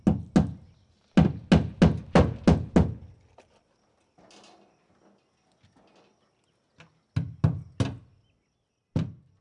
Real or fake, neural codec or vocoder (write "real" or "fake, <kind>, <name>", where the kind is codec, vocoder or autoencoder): real